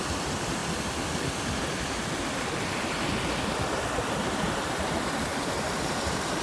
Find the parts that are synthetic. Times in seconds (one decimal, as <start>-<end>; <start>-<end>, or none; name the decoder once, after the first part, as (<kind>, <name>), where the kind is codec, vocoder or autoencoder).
0.0-0.6 (vocoder, BigVGAN v2); 4.4-5.3; 5.8-6.4